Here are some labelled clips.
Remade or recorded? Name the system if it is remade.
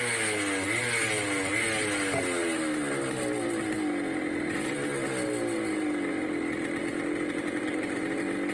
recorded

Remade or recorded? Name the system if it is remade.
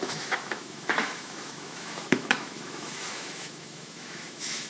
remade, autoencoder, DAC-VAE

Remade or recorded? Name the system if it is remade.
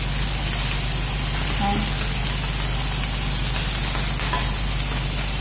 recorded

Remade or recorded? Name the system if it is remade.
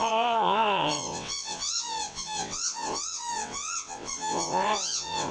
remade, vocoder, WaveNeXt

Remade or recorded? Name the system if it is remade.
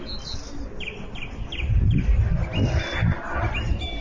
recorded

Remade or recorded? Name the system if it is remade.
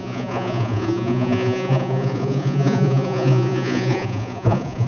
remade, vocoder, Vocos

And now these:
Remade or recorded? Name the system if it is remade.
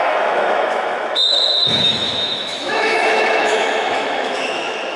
remade, autoencoder, DAC-VAE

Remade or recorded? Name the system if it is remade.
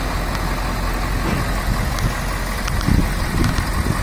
recorded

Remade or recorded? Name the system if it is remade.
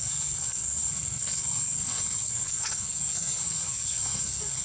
remade, codec, SNAC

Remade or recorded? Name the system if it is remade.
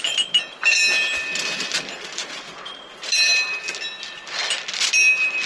recorded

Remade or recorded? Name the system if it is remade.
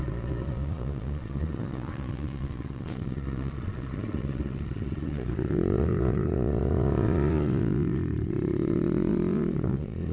remade, vocoder, Vocos